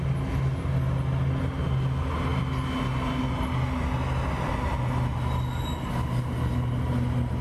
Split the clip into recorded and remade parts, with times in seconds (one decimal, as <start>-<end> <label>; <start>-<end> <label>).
0.0-7.4 recorded

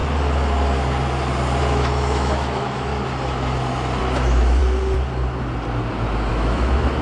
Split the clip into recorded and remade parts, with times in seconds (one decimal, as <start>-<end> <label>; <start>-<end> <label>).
0.0-1.6 recorded; 1.6-2.9 remade; 2.9-4.0 recorded; 4.0-4.6 remade; 4.6-6.3 recorded; 6.3-7.0 remade

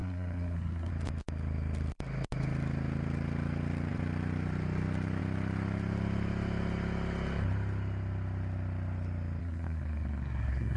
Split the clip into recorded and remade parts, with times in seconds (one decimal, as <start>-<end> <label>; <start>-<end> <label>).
0.0-0.9 remade; 0.9-9.4 recorded; 9.4-10.8 remade

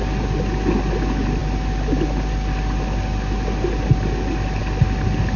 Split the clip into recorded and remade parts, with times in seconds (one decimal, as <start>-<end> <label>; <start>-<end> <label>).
0.0-5.4 recorded